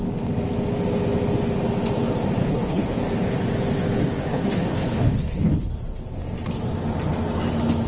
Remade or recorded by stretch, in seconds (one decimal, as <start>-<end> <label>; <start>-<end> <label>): 0.0-2.4 recorded; 2.4-3.0 remade; 3.0-4.3 recorded; 4.3-5.7 remade; 5.7-7.9 recorded